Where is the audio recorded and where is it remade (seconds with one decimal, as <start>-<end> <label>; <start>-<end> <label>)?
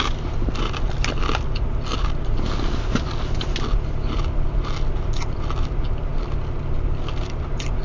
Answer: 0.0-7.8 recorded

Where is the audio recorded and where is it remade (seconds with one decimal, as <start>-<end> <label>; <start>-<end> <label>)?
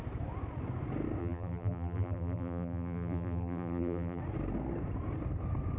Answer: 0.0-1.2 recorded; 1.2-4.2 remade; 4.2-5.8 recorded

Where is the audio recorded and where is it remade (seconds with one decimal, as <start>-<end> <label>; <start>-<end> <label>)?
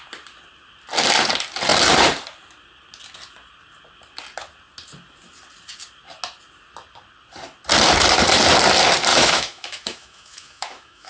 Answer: 0.0-9.1 recorded; 9.1-11.1 remade